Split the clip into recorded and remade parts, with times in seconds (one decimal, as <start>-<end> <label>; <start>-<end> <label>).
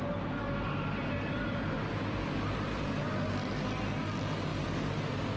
0.0-5.4 recorded